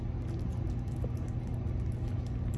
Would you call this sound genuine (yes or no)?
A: yes